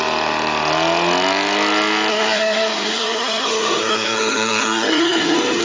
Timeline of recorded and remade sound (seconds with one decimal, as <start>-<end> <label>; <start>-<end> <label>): 0.0-2.1 recorded; 2.1-5.6 remade